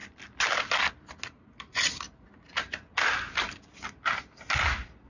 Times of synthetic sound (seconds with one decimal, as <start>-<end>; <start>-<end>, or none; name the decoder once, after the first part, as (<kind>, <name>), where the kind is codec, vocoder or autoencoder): none